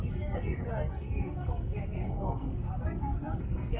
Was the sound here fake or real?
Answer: fake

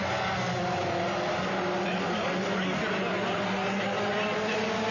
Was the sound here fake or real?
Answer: real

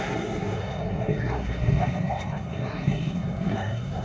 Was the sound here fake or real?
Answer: fake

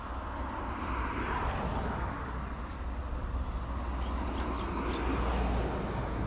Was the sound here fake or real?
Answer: real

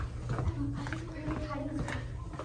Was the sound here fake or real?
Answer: real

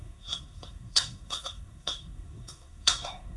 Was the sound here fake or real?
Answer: fake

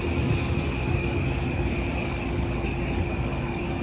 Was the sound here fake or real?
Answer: fake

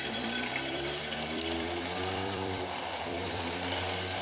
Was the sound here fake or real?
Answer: fake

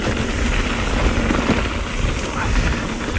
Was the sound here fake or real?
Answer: real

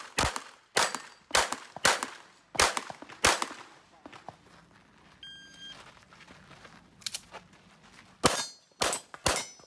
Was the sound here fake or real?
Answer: real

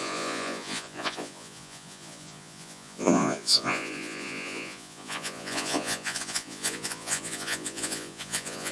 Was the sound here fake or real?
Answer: fake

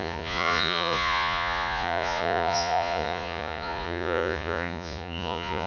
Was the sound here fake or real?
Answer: fake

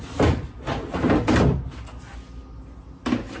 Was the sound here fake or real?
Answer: real